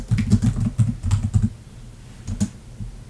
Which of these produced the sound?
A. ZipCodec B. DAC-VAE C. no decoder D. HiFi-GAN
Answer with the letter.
C